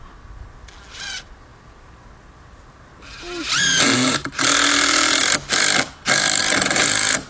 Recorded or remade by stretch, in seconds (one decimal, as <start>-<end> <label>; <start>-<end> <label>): 0.0-7.3 recorded